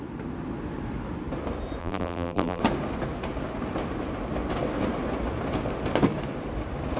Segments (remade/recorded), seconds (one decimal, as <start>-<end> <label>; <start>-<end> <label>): 0.0-1.8 recorded; 1.8-2.6 remade; 2.6-7.0 recorded